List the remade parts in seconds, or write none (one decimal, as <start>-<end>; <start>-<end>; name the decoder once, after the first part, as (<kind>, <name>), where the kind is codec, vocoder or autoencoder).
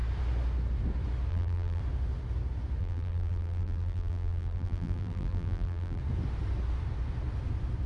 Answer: 1.3-1.8 (vocoder, BigVGAN v2); 2.8-6.0